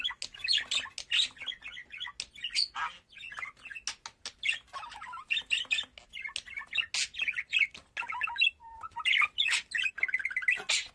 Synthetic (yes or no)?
no